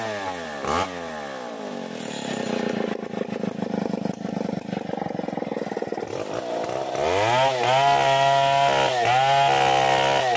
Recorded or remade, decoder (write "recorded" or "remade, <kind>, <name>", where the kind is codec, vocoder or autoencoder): recorded